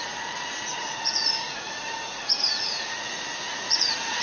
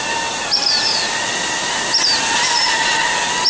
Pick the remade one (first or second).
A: first